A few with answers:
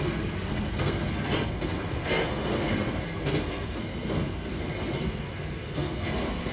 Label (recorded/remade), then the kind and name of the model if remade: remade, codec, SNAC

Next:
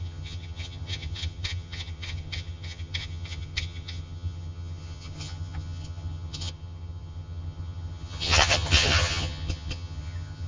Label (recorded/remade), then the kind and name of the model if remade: remade, vocoder, HiFi-GAN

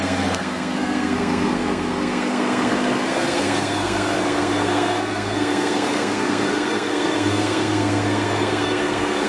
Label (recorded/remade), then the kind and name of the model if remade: remade, codec, SNAC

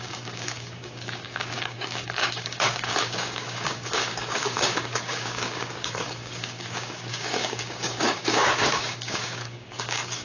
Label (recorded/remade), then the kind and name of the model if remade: remade, codec, DAC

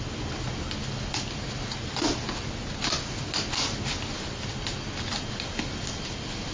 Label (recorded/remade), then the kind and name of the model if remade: recorded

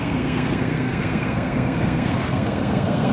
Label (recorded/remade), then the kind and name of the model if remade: remade, codec, SNAC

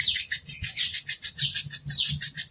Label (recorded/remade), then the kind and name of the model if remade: recorded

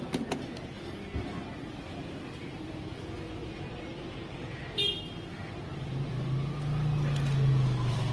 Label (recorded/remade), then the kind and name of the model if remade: recorded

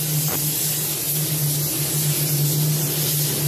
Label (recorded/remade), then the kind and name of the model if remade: recorded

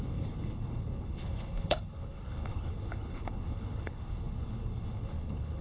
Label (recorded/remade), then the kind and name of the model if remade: remade, codec, HILCodec